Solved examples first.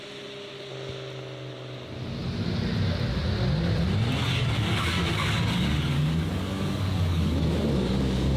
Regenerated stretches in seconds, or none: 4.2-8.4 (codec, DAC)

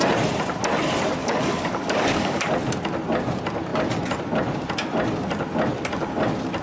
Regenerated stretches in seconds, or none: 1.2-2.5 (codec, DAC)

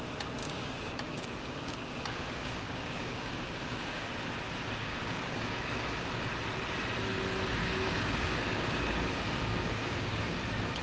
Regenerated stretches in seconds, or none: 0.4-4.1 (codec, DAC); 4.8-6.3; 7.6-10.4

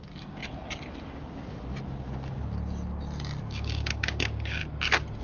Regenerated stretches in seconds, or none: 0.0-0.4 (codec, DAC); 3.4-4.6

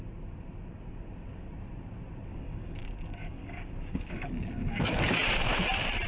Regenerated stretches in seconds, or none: 2.3-5.0 (codec, DAC)

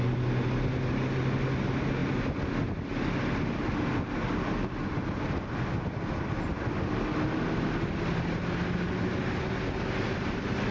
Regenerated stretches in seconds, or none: none